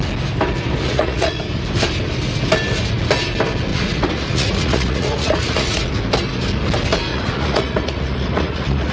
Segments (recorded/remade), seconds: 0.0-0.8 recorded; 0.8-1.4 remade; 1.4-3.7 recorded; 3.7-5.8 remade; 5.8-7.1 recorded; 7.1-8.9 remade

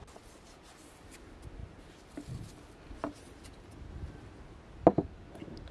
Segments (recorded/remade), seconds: 0.0-5.7 recorded

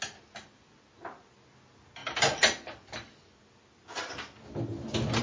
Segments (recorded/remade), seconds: 0.0-5.2 recorded

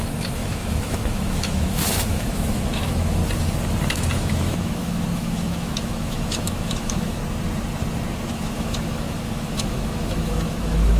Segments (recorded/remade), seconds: 0.0-3.2 remade; 3.2-3.9 recorded; 3.9-7.2 remade; 7.2-8.3 recorded; 8.3-11.0 remade

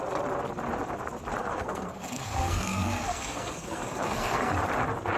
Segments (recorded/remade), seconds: 0.0-1.4 recorded; 1.4-4.5 remade; 4.5-5.2 recorded

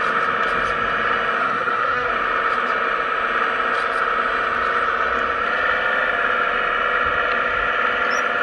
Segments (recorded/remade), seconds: 0.0-1.4 recorded; 1.4-2.1 remade; 2.1-8.4 recorded

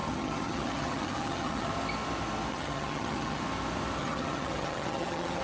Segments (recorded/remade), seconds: 0.0-1.7 remade; 1.7-2.5 recorded; 2.5-3.4 remade; 3.4-4.0 recorded; 4.0-5.4 remade